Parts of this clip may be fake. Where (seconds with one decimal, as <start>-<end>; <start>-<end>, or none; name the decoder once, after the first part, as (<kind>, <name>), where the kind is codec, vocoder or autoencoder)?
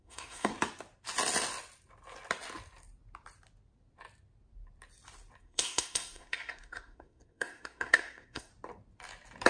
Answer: 0.0-0.5 (codec, SNAC); 5.4-8.5